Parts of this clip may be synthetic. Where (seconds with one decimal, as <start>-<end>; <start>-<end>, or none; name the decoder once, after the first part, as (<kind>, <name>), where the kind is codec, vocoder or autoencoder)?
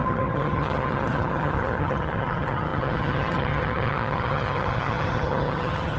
0.0-6.0 (vocoder, HiFi-GAN)